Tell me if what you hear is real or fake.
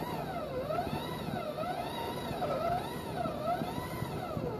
real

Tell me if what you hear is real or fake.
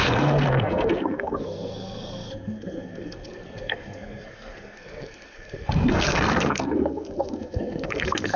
fake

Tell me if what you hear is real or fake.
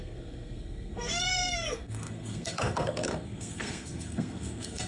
fake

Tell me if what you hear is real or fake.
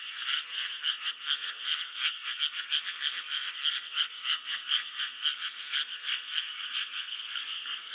fake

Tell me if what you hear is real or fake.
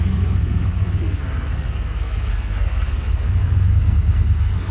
fake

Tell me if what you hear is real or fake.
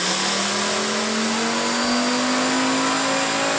real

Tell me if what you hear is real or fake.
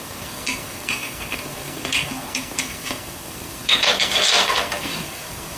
fake